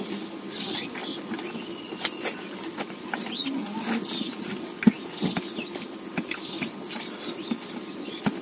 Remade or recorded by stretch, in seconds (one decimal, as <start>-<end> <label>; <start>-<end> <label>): 0.0-8.4 recorded